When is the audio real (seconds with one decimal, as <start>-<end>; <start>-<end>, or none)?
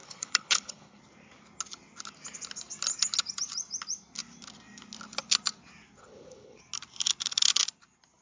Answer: 1.0-6.0; 6.6-8.2